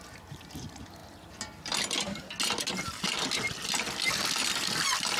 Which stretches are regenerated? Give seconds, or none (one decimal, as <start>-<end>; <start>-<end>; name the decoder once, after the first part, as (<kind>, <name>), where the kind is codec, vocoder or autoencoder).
none